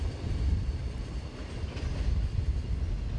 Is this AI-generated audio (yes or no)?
no